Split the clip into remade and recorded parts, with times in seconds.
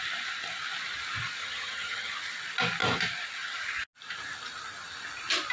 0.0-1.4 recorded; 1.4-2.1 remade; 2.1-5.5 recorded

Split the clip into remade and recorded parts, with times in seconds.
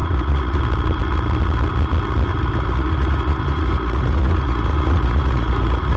0.0-0.6 remade; 0.6-2.3 recorded; 2.3-6.0 remade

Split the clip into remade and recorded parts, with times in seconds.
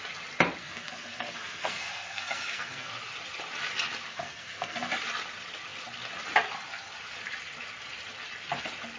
0.0-0.6 recorded; 0.6-2.9 remade; 2.9-4.1 recorded; 4.1-4.9 remade; 4.9-9.0 recorded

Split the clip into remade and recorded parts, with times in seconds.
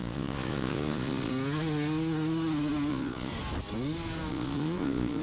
0.0-1.3 remade; 1.3-2.9 recorded; 2.9-3.3 remade; 3.3-4.3 recorded; 4.3-5.2 remade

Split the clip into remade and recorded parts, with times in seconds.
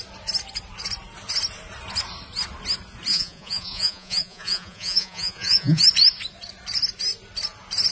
0.0-3.1 recorded; 3.1-5.8 remade; 5.8-7.9 recorded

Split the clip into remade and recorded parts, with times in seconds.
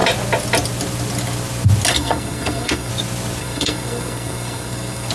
0.0-1.9 recorded; 1.9-2.9 remade; 2.9-3.4 recorded; 3.4-5.1 remade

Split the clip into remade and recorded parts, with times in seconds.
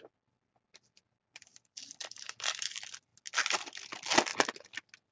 0.0-1.5 recorded; 1.5-2.7 remade; 2.7-5.1 recorded